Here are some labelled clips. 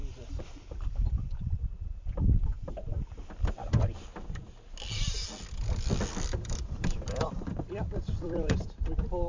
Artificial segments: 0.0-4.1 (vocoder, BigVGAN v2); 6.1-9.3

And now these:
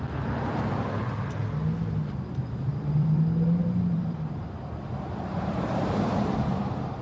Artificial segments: 2.7-7.0 (vocoder, BigVGAN v2)

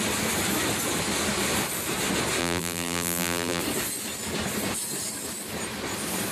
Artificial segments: 2.4-3.6 (vocoder, BigVGAN v2)

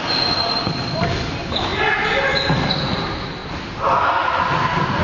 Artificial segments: none